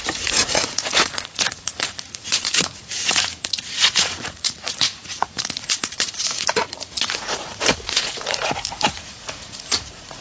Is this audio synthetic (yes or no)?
yes